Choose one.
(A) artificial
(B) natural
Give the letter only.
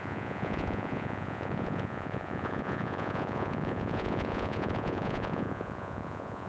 A